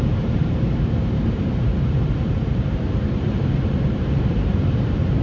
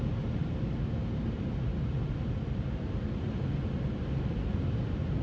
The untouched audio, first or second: second